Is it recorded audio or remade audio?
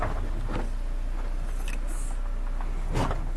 recorded